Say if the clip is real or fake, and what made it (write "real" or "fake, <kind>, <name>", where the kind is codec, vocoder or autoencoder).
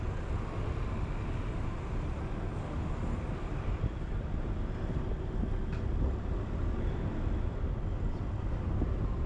real